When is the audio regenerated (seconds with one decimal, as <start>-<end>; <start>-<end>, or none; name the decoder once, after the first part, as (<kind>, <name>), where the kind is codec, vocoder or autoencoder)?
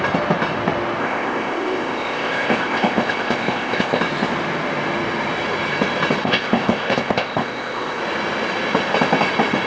1.0-4.0 (codec, ZipCodec); 6.2-8.0